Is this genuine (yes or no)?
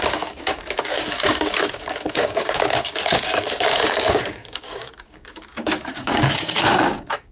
no